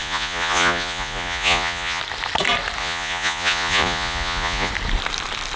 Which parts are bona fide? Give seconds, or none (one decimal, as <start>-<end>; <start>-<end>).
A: 2.0-2.8; 4.7-5.6